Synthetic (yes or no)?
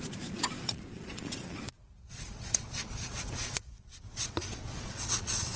yes